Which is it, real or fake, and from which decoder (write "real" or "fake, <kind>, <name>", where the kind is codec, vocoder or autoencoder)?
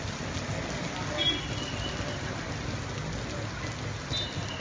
real